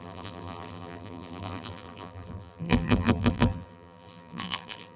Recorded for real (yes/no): no